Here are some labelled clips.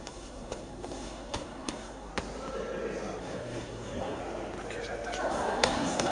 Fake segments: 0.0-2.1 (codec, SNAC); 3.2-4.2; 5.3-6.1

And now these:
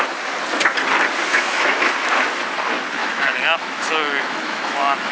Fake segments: 1.3-1.9 (autoencoder, DAC-VAE); 3.0-5.1

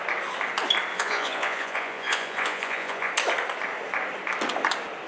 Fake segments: 0.9-3.1 (vocoder, Vocos)

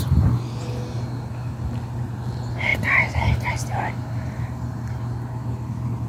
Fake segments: 2.7-5.0 (vocoder, BigVGAN v2)

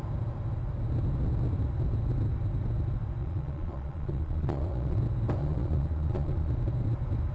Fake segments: 3.2-5.0 (vocoder, Vocos); 5.4-6.5

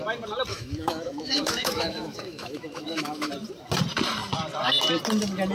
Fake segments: 0.5-3.3 (autoencoder, DAC-VAE)